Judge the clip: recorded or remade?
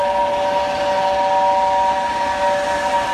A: recorded